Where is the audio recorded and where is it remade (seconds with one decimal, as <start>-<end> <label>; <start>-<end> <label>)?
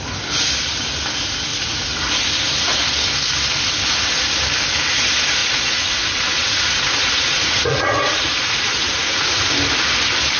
0.0-1.5 recorded; 1.5-2.0 remade; 2.0-5.4 recorded; 5.4-9.5 remade; 9.5-10.4 recorded